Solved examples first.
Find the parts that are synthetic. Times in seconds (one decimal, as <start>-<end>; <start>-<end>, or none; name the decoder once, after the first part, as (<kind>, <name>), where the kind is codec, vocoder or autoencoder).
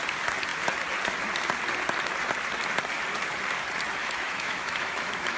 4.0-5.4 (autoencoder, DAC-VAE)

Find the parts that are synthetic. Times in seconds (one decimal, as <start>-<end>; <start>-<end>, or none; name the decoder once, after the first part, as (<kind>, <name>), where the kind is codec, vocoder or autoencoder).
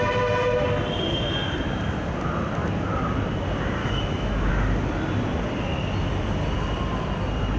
3.8-4.5 (autoencoder, DAC-VAE)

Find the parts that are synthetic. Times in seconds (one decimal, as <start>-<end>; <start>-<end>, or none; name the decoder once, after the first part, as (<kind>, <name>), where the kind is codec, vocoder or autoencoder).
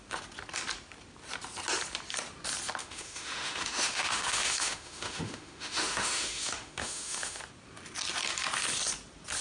2.8-7.4 (autoencoder, DAC-VAE)